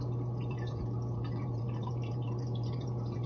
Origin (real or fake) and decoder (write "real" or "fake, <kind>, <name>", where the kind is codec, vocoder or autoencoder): fake, vocoder, BigVGAN v2